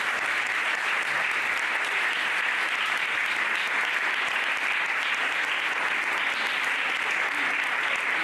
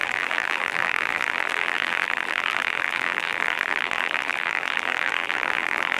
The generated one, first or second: second